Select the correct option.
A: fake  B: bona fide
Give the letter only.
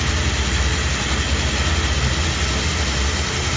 B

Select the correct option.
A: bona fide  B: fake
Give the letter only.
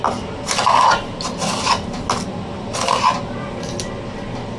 A